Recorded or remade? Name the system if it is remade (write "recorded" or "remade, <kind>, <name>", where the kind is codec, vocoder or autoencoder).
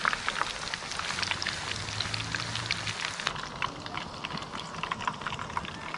recorded